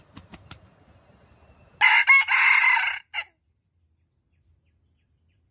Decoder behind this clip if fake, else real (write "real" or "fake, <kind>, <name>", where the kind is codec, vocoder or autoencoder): real